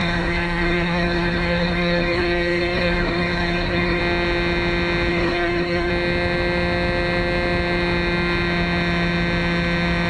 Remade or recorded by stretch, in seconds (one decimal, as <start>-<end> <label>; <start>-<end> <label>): 0.0-4.0 remade; 4.0-5.1 recorded; 5.1-5.9 remade; 5.9-10.1 recorded